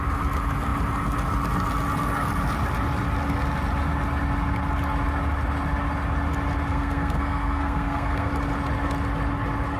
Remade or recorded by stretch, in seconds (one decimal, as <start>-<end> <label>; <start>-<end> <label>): 0.0-6.7 recorded; 6.7-8.3 remade; 8.3-9.8 recorded